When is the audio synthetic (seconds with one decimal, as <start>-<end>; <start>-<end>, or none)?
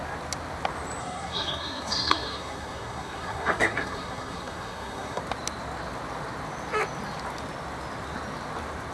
1.0-5.2